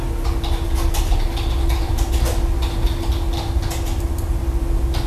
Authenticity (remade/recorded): recorded